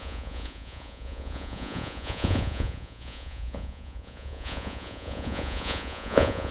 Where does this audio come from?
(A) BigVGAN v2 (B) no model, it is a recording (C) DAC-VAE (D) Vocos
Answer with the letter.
D